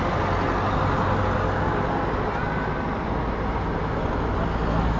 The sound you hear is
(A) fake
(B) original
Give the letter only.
B